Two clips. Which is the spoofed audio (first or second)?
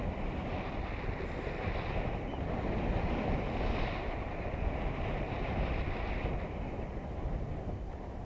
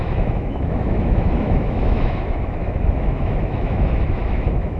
second